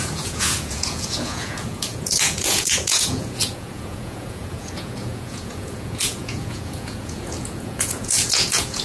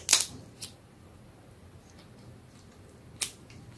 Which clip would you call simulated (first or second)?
first